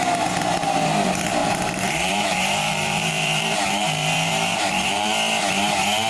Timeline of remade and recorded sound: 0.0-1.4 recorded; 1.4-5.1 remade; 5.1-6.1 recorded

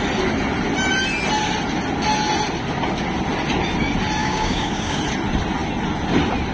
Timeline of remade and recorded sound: 0.0-4.2 recorded; 4.2-5.0 remade; 5.0-6.5 recorded

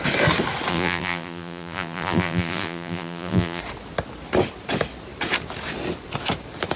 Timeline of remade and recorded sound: 0.0-0.7 recorded; 0.7-3.6 remade; 3.6-6.8 recorded

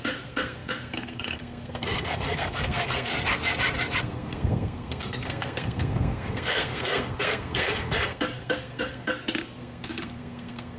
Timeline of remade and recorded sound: 0.0-3.1 remade; 3.1-4.0 recorded; 4.0-9.1 remade; 9.1-9.6 recorded; 9.6-10.8 remade

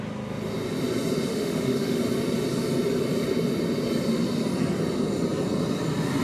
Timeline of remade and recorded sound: 0.0-1.3 recorded; 1.3-2.0 remade; 2.0-6.2 recorded

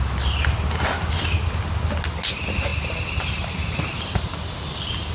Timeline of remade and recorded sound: 0.0-5.1 recorded

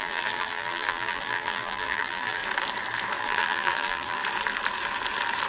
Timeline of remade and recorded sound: 0.0-2.4 remade; 2.4-3.2 recorded; 3.2-4.2 remade; 4.2-5.5 recorded